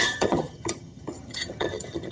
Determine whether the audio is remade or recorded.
remade